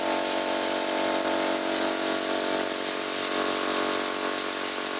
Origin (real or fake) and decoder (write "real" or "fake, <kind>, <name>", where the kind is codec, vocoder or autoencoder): real